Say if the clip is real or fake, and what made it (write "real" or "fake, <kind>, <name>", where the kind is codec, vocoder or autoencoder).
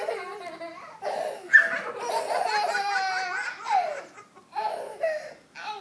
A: real